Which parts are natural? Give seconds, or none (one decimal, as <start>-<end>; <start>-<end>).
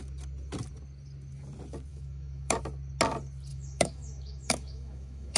0.0-1.9; 2.6-3.5